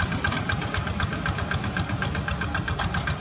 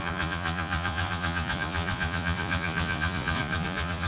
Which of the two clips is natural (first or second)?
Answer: first